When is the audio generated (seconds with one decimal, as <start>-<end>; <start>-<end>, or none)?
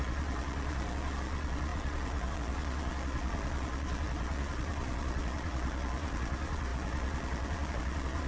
0.0-8.3